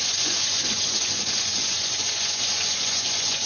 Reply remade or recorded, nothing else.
remade